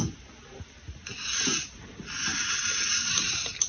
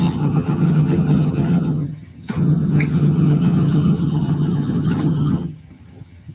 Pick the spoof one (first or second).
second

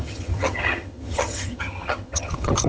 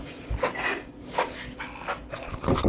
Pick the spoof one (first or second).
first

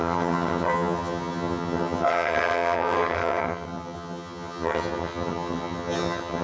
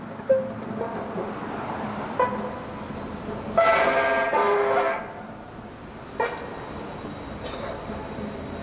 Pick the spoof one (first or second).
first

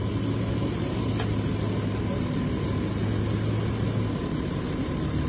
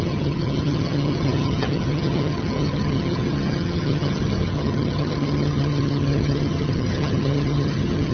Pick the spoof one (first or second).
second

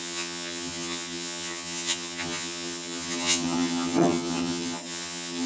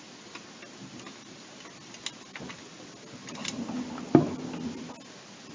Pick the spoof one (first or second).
first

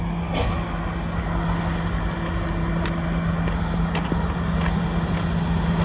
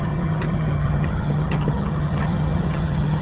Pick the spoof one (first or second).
second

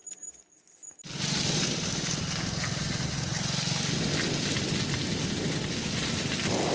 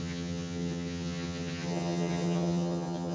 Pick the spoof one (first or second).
second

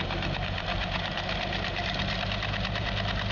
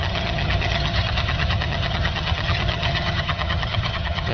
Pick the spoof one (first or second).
second